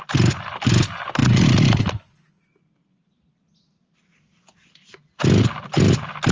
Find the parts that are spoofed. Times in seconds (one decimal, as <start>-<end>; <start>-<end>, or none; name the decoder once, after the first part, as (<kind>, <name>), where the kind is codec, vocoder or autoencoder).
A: none